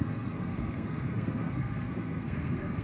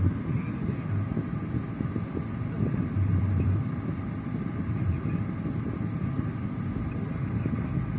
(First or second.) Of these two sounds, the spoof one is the first